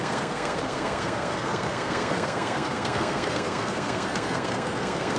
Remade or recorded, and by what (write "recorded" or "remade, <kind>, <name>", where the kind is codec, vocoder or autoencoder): remade, codec, SNAC